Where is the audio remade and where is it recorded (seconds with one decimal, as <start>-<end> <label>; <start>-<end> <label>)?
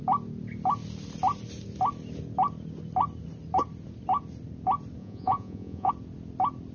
0.0-5.0 recorded; 5.0-5.9 remade; 5.9-6.7 recorded